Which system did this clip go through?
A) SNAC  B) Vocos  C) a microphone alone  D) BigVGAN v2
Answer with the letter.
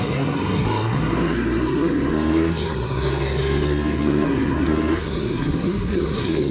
A